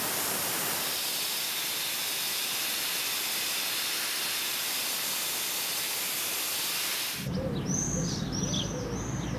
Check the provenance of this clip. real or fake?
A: real